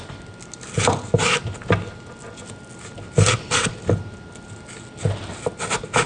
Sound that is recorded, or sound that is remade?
recorded